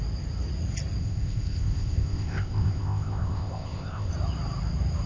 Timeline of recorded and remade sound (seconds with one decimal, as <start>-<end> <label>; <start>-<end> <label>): 0.0-1.0 recorded; 1.0-4.1 remade; 4.1-5.1 recorded

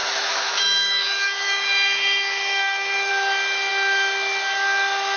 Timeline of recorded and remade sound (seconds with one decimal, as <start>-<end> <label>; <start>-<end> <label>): 0.0-3.1 remade; 3.1-5.2 recorded